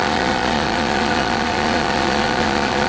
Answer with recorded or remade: remade